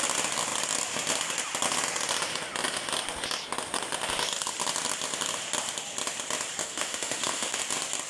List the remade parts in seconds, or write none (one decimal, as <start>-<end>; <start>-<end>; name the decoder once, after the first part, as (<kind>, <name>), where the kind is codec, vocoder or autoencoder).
6.6-7.6 (autoencoder, DAC-VAE)